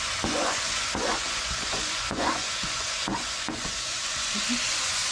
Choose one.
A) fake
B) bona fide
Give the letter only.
A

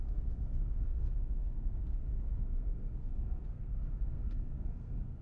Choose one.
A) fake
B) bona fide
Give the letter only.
A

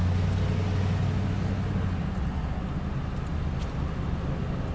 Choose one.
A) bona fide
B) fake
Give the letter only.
A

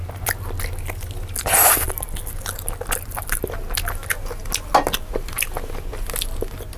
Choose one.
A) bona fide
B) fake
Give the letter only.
A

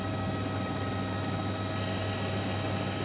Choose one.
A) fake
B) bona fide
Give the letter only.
B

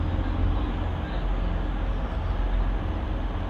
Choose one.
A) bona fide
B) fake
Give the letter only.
A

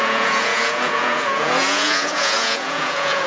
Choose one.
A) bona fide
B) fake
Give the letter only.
B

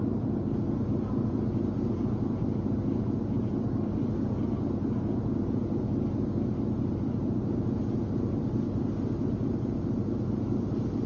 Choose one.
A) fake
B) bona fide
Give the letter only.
B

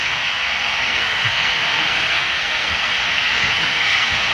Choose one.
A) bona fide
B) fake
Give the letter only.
B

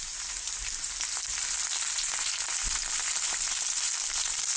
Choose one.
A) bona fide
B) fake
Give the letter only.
A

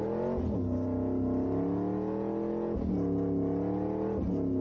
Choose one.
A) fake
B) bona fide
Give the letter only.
B